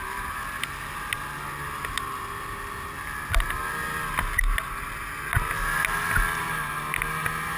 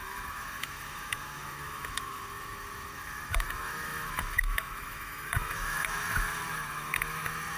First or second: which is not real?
second